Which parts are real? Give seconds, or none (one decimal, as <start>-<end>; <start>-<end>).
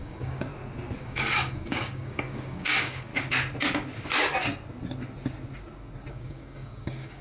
0.5-1.0; 3.1-6.1